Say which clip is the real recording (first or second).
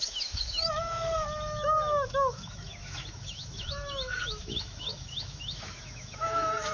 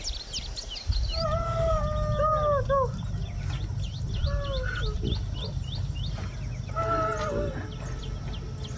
second